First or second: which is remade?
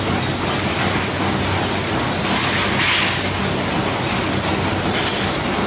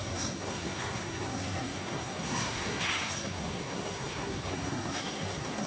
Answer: second